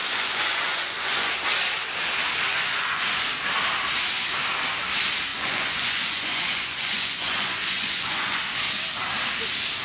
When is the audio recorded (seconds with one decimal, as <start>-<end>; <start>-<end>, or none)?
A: 1.3-2.5; 3.3-5.3; 8.4-9.8